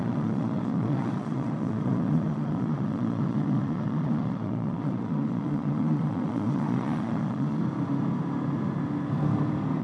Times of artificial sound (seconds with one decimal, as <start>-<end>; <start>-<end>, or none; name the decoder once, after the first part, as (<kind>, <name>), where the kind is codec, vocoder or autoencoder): 0.0-7.6 (vocoder, Vocos)